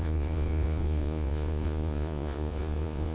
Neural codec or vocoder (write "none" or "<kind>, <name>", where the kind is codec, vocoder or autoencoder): vocoder, Vocos